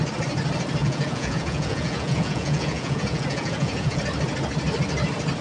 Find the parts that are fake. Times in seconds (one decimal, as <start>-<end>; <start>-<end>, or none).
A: 0.8-4.0

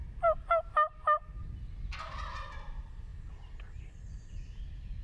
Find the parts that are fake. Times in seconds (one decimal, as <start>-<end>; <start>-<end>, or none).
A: none

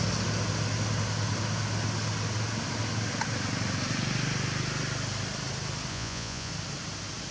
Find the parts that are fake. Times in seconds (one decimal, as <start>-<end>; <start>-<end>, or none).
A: 5.9-6.5

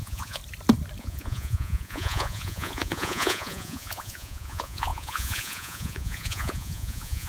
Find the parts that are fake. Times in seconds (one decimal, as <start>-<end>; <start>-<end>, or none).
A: 0.0-0.4; 1.0-7.3

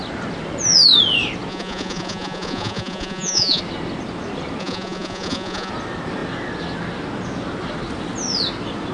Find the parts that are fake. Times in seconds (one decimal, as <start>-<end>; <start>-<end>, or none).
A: 1.5-3.6; 4.6-5.7

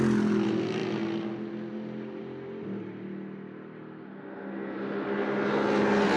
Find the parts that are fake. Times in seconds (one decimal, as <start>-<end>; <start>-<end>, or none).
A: none

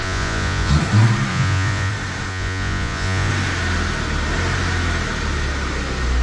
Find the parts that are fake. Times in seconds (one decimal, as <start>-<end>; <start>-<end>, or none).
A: 0.0-0.7; 1.3-1.9; 2.3-3.3

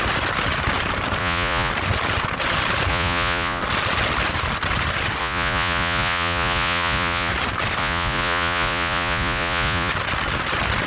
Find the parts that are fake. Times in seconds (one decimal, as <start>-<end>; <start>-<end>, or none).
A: 1.2-1.7; 2.9-3.6; 5.2-7.3; 7.8-9.9